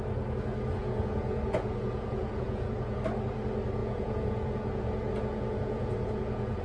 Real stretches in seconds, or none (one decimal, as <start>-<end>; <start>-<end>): 0.0-0.8; 3.0-3.8